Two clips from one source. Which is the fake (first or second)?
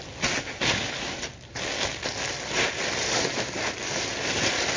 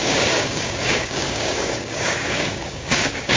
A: second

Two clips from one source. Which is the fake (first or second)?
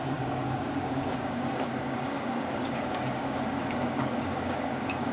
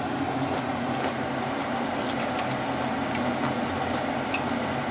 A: first